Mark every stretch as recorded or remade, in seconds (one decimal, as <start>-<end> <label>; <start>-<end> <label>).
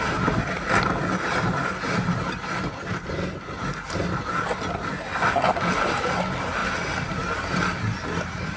0.0-8.6 recorded